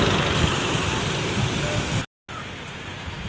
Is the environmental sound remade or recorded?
recorded